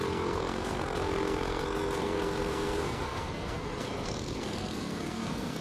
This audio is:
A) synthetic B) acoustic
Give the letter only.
A